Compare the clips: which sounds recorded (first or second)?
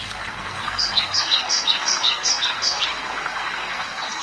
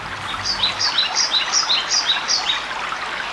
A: second